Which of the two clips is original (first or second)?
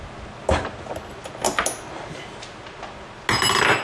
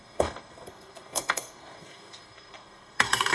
first